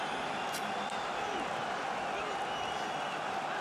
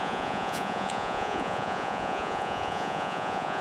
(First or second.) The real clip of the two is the first